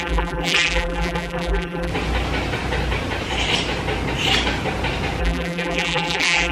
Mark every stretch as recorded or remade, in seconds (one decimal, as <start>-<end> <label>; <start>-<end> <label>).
0.0-1.9 remade; 1.9-5.2 recorded; 5.2-6.5 remade